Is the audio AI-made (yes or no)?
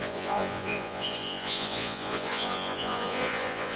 yes